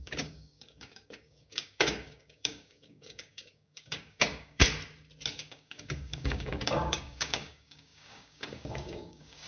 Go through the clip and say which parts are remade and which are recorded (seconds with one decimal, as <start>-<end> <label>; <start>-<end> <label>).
0.0-4.6 remade; 4.6-5.3 recorded; 5.3-9.5 remade